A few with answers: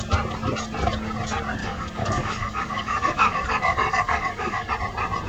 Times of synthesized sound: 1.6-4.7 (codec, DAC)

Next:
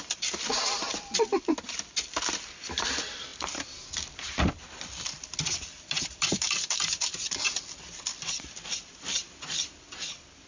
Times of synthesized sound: 0.0-10.5 (vocoder, BigVGAN v2)

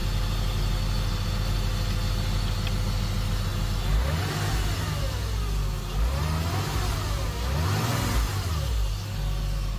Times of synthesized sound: none

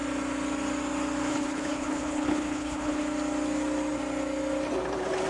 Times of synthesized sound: 1.3-3.0 (codec, HILCodec)

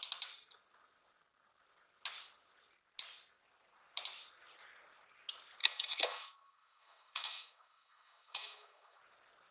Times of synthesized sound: 5.6-9.0 (autoencoder, DAC-VAE)